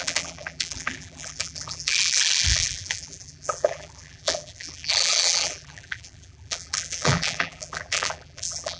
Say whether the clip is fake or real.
fake